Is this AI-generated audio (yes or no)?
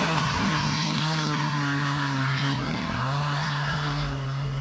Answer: yes